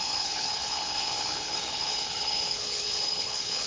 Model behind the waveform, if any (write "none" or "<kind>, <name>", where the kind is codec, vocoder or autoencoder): codec, HILCodec